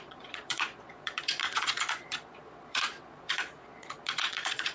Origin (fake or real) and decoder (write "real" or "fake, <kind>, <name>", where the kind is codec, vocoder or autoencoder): fake, vocoder, Vocos